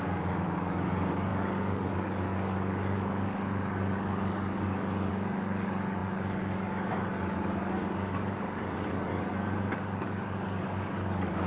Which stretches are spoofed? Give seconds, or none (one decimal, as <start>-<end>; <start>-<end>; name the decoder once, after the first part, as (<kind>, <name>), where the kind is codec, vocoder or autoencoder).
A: 0.0-11.5 (codec, DAC)